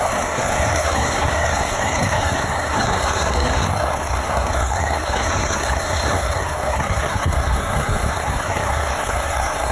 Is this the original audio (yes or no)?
no